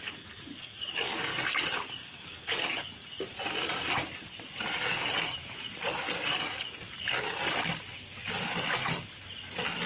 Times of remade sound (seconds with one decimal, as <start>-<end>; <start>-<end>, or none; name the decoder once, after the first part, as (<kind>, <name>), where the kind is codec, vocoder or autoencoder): 0.0-1.3 (codec, DAC); 1.9-3.0; 6.8-7.4